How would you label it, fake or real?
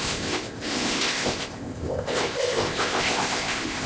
fake